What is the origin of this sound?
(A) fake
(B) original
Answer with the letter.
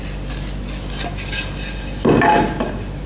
B